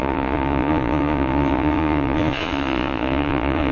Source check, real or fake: fake